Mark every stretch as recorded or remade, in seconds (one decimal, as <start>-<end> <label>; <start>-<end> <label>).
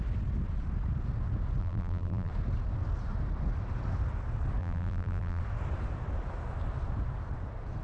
0.0-1.6 recorded; 1.6-2.3 remade; 2.3-4.6 recorded; 4.6-5.4 remade; 5.4-7.8 recorded